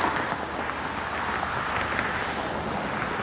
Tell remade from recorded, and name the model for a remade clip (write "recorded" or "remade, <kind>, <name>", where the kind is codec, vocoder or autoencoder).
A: recorded